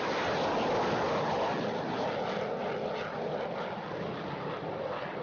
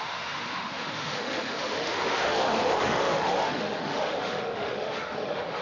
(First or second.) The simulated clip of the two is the second